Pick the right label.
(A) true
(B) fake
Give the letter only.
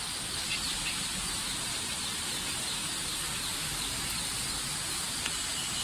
A